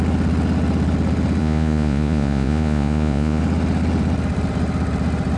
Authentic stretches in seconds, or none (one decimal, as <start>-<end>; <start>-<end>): 0.0-1.4; 3.4-5.4